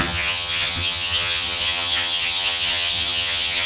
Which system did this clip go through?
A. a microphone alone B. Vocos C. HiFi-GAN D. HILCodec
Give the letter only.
C